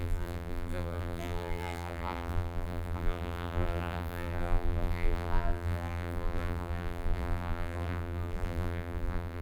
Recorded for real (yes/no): no